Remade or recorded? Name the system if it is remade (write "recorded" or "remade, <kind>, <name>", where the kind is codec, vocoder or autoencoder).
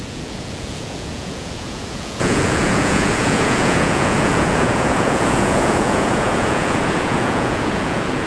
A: remade, vocoder, Vocos